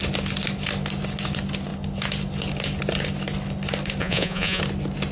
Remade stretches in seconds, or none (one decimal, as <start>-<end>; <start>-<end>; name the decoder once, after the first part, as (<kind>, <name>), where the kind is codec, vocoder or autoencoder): 4.0-4.6 (vocoder, Vocos)